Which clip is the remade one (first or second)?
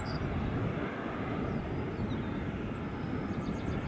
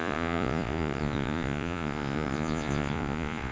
second